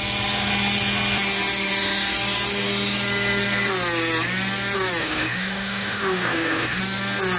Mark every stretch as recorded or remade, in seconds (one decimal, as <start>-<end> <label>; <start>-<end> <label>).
0.0-5.0 recorded; 5.0-6.8 remade; 6.8-7.4 recorded